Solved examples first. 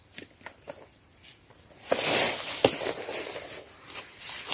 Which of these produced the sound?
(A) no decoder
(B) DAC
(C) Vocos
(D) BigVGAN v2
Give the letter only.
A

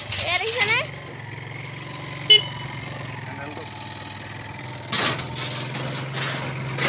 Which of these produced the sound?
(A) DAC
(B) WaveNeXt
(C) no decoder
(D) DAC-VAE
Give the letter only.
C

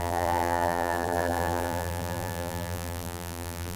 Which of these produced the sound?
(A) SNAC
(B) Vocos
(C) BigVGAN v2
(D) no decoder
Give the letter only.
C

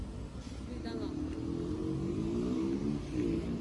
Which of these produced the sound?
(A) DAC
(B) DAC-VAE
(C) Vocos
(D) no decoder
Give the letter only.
D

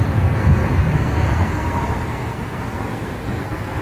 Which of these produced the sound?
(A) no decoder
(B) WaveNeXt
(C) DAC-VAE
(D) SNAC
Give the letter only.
D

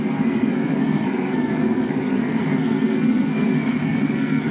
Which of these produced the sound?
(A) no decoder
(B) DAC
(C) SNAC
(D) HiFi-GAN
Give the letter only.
C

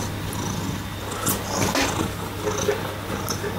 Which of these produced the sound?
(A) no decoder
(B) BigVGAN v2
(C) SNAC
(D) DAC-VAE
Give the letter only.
A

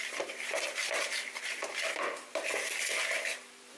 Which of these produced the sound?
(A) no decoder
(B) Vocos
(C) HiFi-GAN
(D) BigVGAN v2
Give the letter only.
D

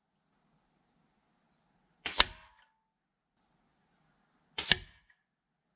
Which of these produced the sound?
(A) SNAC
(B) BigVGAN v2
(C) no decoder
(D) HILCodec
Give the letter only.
C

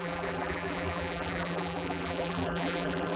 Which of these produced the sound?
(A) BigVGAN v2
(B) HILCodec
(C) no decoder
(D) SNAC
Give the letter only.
A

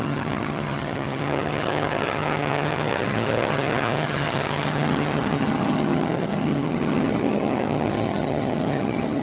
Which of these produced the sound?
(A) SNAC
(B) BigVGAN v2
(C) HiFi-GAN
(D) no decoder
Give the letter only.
C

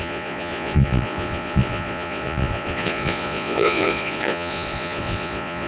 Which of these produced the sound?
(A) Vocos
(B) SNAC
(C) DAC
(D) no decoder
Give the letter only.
A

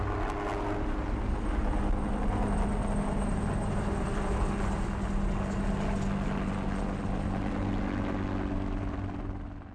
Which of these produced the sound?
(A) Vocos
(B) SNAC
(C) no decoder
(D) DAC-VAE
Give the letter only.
C